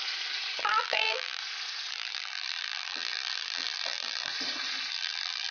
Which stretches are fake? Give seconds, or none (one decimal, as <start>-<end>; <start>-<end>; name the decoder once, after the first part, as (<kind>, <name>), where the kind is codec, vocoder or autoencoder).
0.6-1.4 (vocoder, BigVGAN v2); 1.9-4.3; 4.9-5.5